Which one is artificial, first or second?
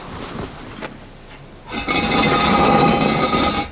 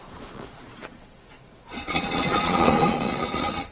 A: second